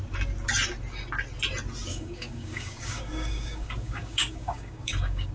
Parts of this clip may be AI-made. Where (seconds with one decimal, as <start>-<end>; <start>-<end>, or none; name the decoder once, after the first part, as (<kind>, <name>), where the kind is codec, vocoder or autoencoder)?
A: 1.9-5.3 (codec, DAC)

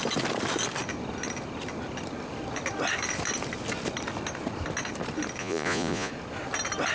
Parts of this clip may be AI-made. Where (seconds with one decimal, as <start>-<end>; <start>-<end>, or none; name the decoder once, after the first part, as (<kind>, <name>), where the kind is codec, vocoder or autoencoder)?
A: 5.4-6.1 (vocoder, Vocos)